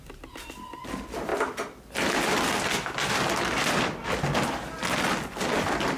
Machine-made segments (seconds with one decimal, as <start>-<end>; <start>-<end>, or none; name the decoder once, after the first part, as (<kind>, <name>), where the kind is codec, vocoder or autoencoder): none

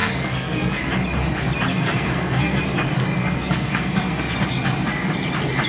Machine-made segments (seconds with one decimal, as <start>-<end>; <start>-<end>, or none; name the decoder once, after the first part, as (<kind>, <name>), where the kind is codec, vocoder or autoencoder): 0.0-0.9 (codec, SNAC); 1.7-2.6; 3.2-4.2

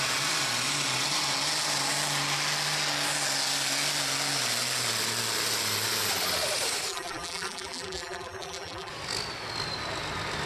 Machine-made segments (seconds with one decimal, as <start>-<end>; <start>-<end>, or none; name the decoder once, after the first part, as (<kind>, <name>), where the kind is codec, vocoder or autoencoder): 6.9-8.9 (vocoder, BigVGAN v2)

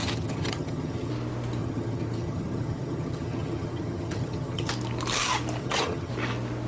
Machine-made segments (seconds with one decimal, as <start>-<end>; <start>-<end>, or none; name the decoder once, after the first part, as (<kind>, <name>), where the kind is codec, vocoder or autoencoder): 0.0-1.1 (vocoder, HiFi-GAN); 1.6-4.7; 5.6-6.1

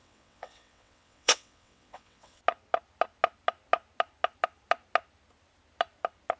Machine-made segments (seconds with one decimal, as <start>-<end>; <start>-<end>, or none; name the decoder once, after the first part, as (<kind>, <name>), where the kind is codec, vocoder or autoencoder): 0.0-2.4 (vocoder, WaveNeXt)

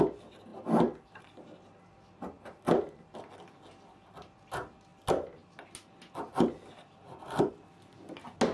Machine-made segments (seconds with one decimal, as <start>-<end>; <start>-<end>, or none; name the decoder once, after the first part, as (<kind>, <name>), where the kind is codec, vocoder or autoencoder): none

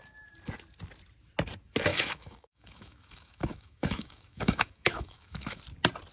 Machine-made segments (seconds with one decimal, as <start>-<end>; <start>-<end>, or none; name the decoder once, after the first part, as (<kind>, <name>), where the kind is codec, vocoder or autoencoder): 1.9-5.6 (autoencoder, DAC-VAE)

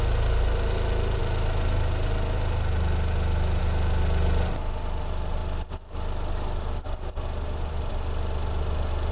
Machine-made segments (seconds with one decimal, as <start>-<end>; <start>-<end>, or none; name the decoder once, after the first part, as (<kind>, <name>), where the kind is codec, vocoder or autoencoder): none